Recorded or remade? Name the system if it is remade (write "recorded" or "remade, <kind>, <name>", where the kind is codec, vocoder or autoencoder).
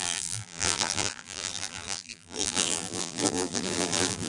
remade, vocoder, BigVGAN v2